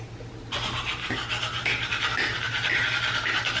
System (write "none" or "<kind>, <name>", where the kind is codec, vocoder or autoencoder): none